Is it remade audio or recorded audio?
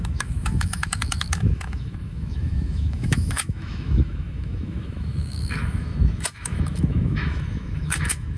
remade